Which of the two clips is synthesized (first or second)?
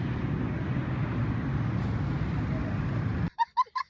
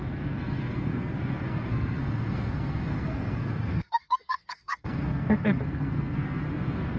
second